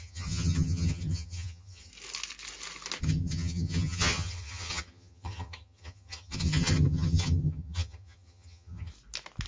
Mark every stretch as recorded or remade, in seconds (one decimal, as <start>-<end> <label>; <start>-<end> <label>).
0.0-1.9 remade; 1.9-3.0 recorded; 3.0-8.9 remade; 8.9-9.5 recorded